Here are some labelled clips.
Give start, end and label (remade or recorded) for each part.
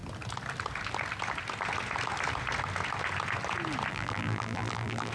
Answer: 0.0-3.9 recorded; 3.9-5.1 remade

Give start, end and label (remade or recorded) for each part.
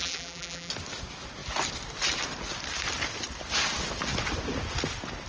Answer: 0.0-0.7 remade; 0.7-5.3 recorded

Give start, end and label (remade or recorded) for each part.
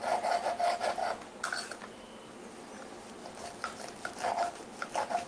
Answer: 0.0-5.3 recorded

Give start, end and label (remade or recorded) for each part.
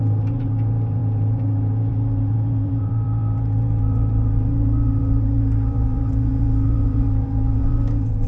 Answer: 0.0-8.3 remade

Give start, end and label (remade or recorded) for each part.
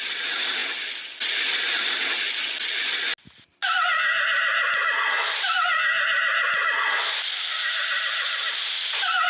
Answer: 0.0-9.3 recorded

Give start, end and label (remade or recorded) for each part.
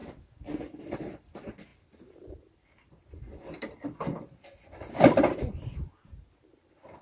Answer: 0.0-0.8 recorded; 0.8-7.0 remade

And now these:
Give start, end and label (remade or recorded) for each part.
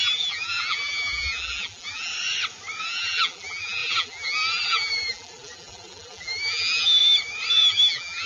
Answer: 0.0-2.1 remade; 2.1-2.8 recorded; 2.8-7.0 remade; 7.0-7.5 recorded; 7.5-8.3 remade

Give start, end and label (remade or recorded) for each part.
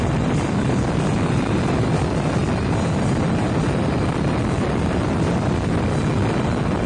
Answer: 0.0-6.9 recorded